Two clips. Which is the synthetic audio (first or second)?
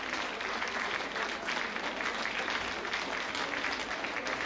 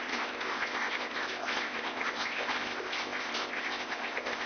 second